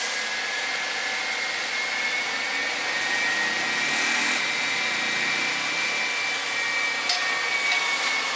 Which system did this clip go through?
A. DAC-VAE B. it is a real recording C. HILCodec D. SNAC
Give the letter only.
B